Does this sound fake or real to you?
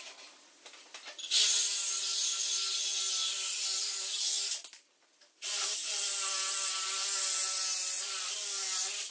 real